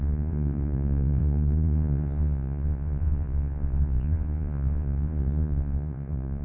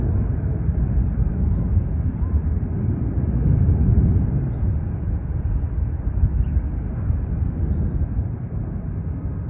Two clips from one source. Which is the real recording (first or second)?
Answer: second